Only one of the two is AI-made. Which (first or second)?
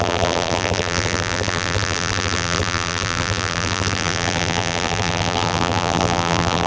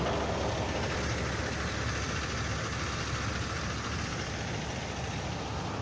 first